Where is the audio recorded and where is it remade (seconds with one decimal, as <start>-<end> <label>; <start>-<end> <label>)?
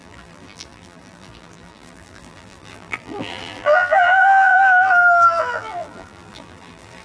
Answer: 0.0-7.0 remade